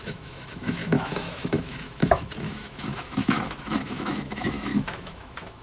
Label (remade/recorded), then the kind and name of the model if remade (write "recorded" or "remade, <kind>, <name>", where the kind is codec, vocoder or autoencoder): remade, autoencoder, DAC-VAE